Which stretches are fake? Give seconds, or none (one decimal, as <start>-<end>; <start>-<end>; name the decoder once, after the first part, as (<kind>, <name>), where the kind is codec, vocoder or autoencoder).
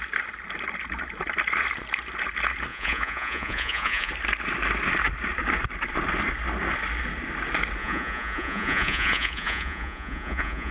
2.7-4.1 (vocoder, Vocos); 7.8-10.7